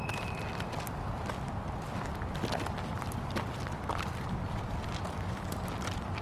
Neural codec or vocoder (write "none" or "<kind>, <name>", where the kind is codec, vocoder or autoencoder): none